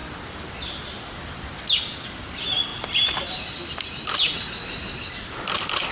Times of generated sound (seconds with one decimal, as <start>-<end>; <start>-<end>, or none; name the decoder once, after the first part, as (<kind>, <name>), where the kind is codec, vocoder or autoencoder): 0.0-5.9 (vocoder, BigVGAN v2)